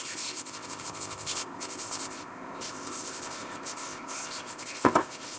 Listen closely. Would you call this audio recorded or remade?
remade